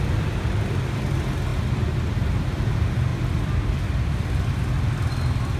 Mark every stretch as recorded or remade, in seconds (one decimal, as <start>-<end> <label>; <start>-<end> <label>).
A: 0.0-5.6 recorded